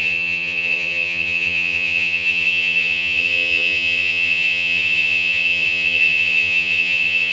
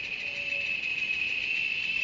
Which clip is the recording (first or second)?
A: second